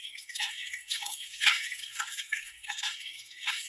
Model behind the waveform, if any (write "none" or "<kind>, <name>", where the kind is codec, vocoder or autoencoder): codec, SNAC